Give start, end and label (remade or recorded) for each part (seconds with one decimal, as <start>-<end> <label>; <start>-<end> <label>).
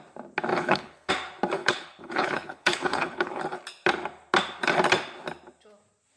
0.0-0.5 recorded; 0.5-1.1 remade; 1.1-1.6 recorded; 1.6-3.4 remade; 3.4-6.2 recorded